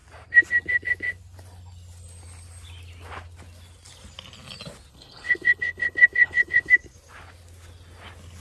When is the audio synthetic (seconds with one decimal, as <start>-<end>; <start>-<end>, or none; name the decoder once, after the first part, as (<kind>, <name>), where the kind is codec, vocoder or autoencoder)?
4.9-6.7 (codec, HILCodec)